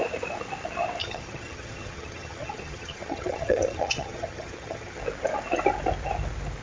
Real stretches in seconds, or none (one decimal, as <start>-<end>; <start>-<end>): 0.0-1.0; 5.0-6.6